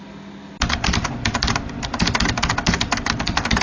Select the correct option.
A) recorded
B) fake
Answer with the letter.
A